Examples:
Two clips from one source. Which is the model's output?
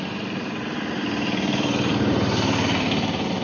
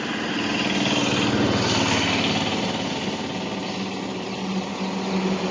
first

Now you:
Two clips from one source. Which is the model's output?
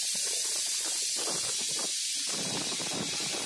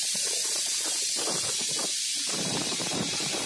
second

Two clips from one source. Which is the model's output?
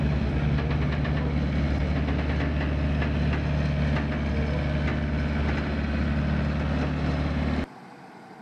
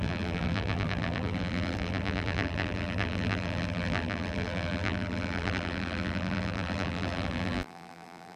second